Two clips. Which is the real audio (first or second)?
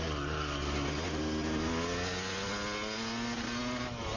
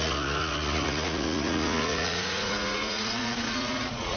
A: first